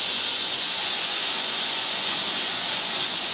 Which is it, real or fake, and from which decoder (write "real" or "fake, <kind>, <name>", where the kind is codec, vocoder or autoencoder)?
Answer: fake, vocoder, Vocos